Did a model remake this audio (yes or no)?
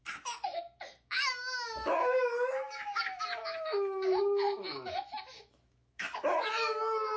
yes